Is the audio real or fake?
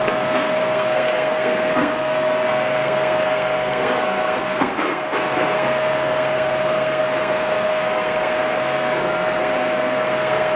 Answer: fake